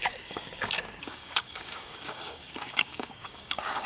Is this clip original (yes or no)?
no